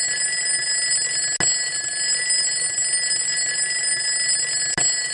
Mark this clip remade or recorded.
recorded